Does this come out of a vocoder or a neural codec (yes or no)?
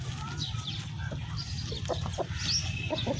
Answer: no